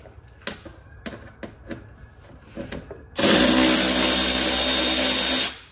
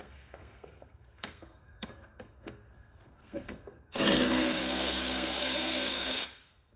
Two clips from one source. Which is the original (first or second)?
first